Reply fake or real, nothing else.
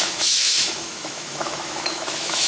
fake